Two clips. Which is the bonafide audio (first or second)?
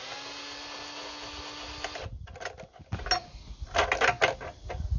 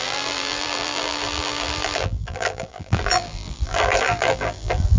first